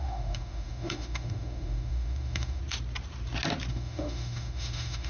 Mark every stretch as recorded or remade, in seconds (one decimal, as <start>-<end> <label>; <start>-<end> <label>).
0.0-2.6 remade; 2.6-3.7 recorded; 3.7-5.1 remade